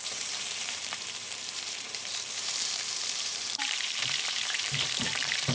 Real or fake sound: fake